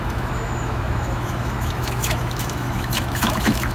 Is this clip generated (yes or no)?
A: yes